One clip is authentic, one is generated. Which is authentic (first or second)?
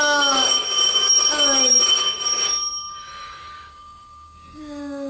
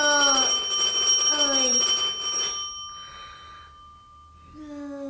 second